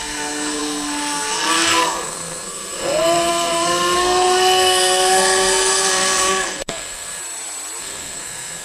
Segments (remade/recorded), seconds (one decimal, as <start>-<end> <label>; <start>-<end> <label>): 0.0-7.2 remade; 7.2-7.8 recorded; 7.8-8.6 remade